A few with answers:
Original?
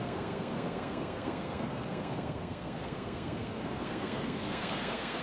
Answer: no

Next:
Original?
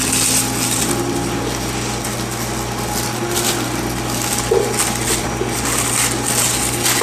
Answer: yes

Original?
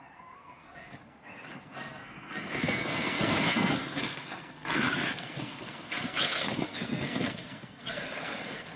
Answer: no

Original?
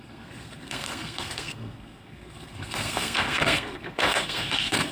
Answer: no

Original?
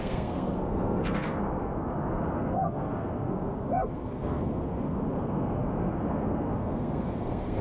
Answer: no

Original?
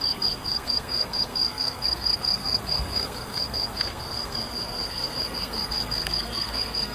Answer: no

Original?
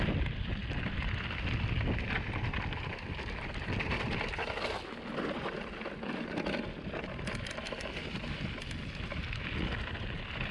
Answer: yes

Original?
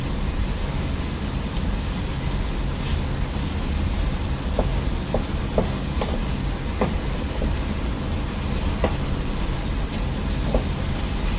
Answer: yes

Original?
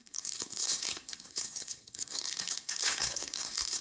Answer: no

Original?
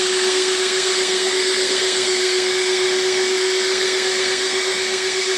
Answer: no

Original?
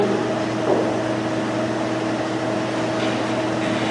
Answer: yes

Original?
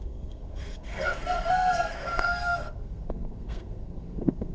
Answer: no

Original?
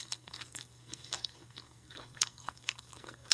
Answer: no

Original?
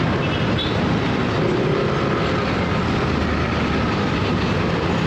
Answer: yes